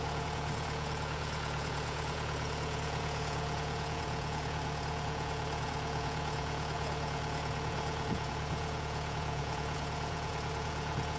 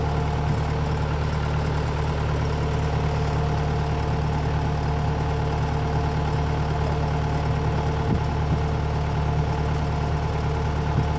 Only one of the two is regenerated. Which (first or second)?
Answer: first